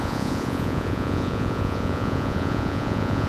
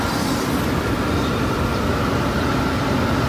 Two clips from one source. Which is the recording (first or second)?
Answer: second